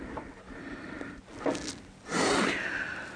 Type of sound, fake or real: real